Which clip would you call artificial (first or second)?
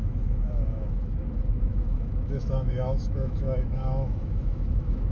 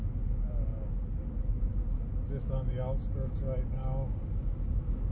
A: first